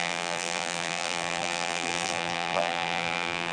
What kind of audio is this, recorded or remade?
remade